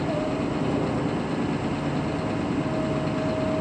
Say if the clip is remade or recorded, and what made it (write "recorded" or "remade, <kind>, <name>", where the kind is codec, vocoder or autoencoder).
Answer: recorded